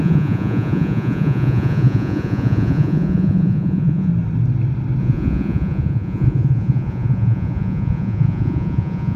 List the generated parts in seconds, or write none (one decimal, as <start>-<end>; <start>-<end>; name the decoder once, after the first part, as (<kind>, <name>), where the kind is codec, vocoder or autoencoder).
0.0-4.1 (vocoder, Vocos); 5.0-9.2